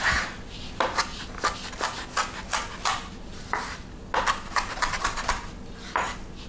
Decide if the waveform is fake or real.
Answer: real